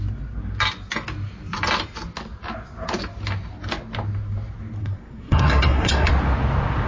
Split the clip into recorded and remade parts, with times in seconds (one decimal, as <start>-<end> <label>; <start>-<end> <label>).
0.0-4.8 recorded; 4.8-6.1 remade; 6.1-6.9 recorded